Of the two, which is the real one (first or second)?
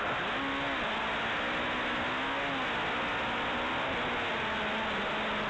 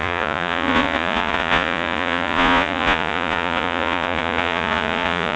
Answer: first